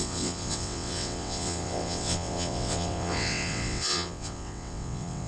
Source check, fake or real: fake